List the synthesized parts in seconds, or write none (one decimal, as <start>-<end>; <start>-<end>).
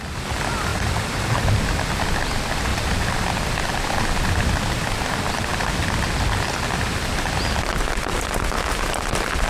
0.7-2.0; 2.7-3.3